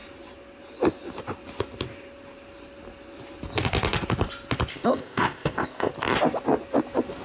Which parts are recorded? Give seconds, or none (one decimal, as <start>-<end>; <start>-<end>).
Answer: 0.0-4.7; 5.9-7.2